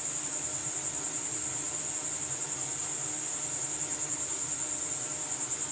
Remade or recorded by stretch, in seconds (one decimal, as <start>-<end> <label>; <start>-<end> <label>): 0.0-5.7 recorded